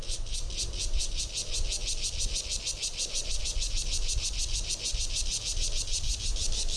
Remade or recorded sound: recorded